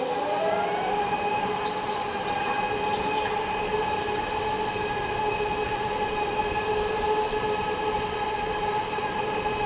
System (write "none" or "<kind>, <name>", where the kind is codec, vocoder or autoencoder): none